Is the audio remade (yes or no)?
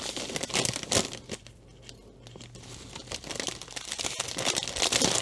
no